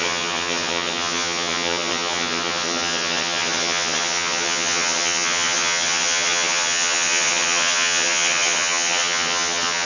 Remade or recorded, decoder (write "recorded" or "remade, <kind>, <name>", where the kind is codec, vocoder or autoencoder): remade, vocoder, HiFi-GAN